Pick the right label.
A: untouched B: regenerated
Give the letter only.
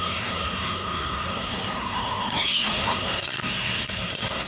B